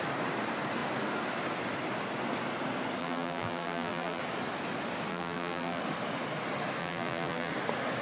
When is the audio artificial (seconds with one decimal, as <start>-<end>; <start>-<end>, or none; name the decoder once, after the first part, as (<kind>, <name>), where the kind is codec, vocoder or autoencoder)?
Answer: 3.0-4.2 (vocoder, BigVGAN v2); 5.1-5.8; 6.8-7.5